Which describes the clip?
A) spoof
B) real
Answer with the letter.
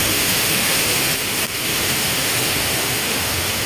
A